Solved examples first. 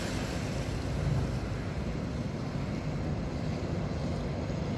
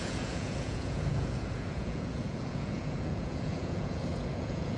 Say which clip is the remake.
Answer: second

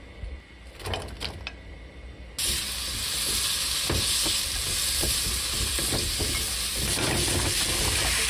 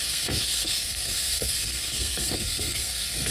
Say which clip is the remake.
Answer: second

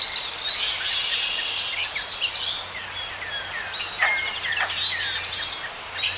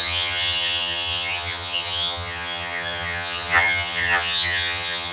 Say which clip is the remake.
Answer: second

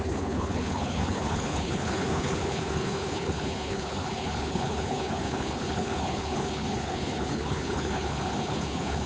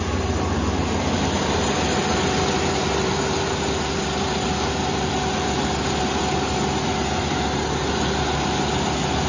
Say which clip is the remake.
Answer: first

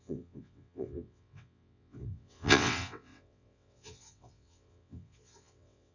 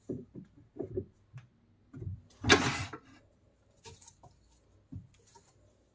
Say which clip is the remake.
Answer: first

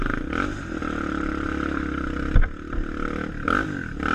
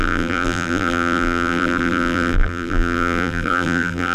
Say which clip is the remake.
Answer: second